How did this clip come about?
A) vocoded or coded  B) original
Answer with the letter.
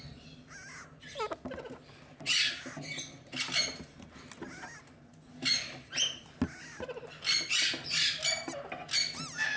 B